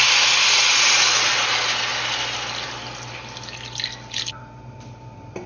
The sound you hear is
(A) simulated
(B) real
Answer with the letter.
B